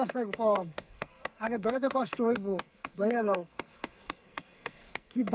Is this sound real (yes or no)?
no